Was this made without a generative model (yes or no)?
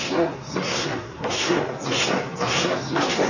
no